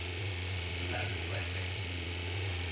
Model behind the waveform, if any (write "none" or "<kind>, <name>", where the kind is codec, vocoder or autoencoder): vocoder, Vocos